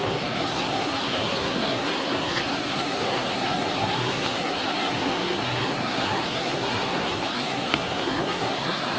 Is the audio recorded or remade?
remade